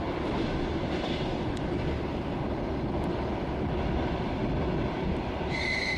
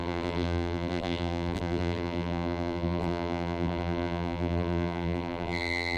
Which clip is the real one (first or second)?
first